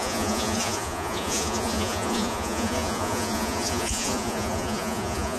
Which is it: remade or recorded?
remade